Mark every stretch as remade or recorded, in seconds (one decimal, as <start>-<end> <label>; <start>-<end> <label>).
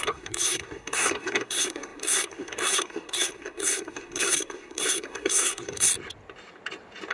0.0-5.9 remade; 5.9-7.1 recorded